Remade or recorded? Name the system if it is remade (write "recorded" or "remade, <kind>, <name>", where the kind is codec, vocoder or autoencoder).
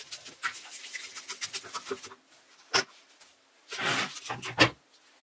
recorded